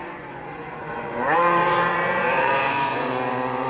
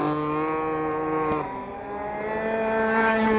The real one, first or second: second